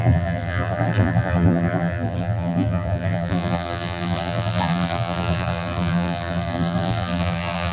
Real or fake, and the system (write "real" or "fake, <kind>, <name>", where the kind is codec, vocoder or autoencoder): fake, vocoder, BigVGAN v2